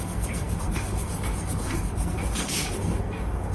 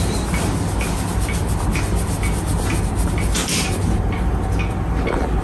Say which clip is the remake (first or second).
first